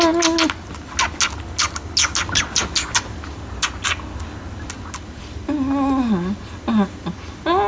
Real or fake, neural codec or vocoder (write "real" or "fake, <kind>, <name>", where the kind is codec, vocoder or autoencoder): real